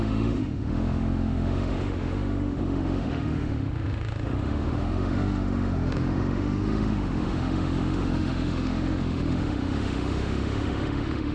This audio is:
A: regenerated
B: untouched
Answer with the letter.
A